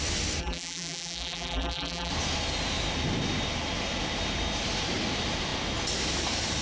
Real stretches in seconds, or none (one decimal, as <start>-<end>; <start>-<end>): 0.0-0.4; 2.1-6.6